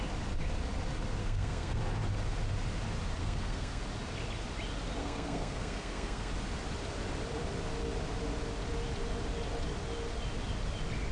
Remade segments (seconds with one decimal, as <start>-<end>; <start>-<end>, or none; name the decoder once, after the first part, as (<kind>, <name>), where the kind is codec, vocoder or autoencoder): 1.2-1.8 (codec, SNAC); 3.2-3.8; 5.0-6.3